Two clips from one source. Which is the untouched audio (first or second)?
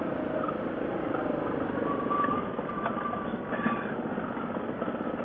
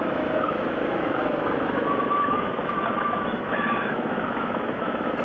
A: first